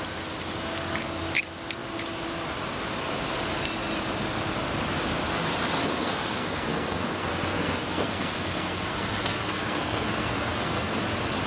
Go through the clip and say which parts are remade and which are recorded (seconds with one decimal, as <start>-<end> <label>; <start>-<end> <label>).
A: 0.0-5.9 recorded; 5.9-11.0 remade; 11.0-11.5 recorded